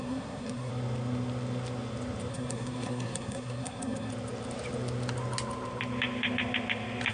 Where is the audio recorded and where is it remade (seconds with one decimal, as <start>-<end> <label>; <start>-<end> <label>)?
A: 0.0-0.7 remade; 0.7-2.3 recorded; 2.3-4.1 remade; 4.1-7.1 recorded